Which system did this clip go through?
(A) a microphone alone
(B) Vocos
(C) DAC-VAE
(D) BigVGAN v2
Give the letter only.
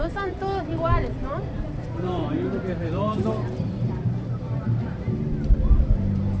D